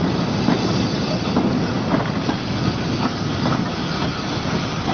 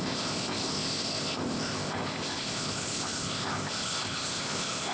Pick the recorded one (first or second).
first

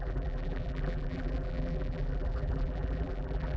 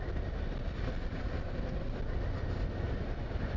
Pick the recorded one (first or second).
second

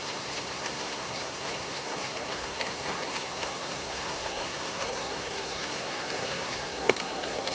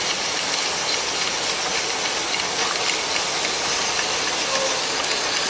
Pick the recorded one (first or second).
second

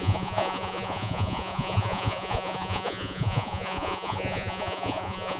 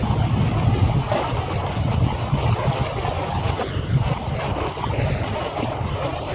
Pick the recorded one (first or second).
second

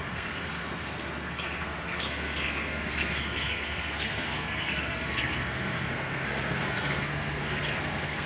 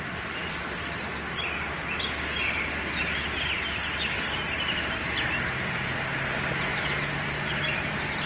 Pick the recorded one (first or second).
second